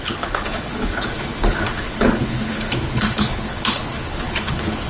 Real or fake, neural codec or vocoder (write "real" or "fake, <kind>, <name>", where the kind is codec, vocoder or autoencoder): fake, codec, HILCodec